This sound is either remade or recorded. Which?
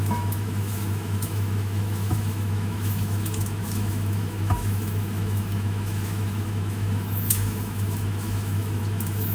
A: remade